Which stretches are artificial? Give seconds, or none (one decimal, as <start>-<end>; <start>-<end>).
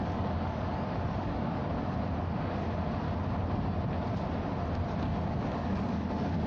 0.0-1.6; 2.2-2.6; 5.0-6.5